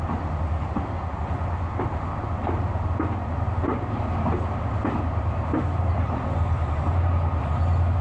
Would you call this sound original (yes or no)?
yes